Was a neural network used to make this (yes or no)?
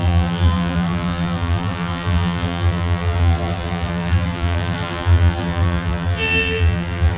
yes